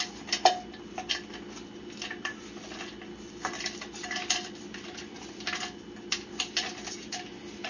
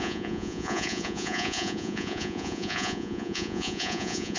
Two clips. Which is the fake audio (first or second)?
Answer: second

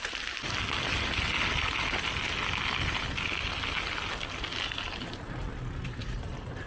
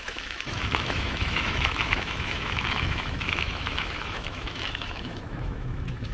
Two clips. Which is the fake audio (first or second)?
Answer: second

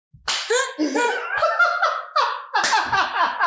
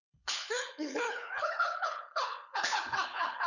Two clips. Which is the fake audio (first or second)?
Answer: second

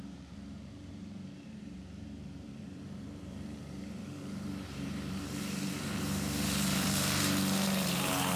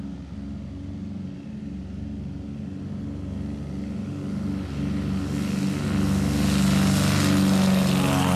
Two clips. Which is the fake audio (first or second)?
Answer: first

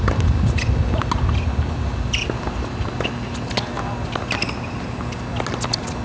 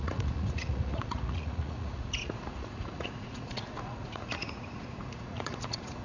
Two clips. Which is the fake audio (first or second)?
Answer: second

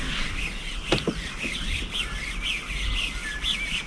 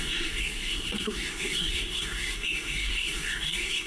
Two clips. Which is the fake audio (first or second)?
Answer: second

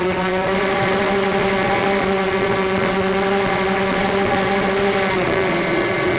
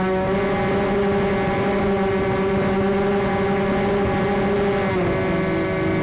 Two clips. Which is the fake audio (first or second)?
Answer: first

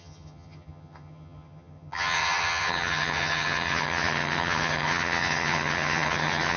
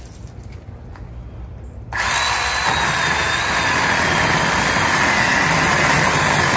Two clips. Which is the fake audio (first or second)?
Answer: first